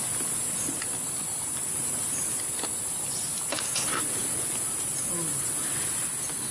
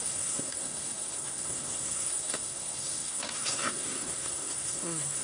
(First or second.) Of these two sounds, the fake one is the second